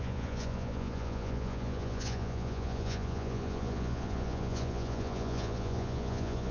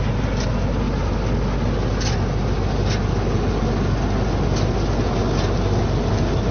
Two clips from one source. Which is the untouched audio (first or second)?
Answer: second